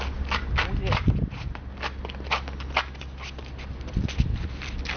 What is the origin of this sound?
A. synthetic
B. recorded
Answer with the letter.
B